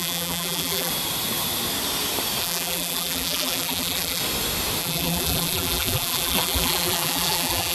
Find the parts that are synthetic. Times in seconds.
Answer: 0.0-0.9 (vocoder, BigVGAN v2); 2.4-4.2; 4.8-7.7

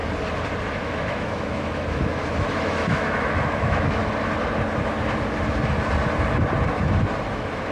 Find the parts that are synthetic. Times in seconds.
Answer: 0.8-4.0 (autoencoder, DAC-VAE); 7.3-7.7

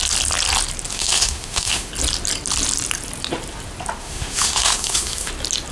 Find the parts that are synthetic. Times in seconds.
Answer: 0.9-1.9 (autoencoder, DAC-VAE); 4.0-5.3

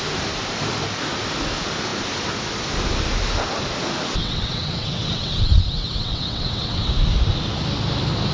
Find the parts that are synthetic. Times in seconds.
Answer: 4.2-6.9 (vocoder, WaveNeXt)